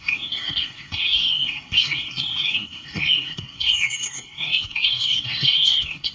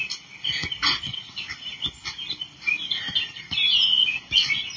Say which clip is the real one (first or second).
second